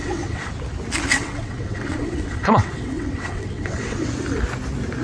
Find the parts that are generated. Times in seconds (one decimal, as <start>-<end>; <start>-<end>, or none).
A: 0.0-0.5; 1.1-4.1